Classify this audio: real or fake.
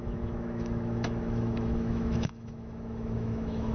fake